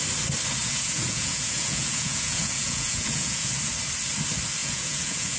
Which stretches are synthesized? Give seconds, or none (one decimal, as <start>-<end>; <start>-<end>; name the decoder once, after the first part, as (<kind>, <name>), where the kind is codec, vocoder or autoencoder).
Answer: 0.6-3.5 (vocoder, Vocos); 4.6-5.4